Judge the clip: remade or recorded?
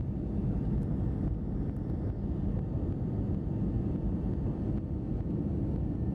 recorded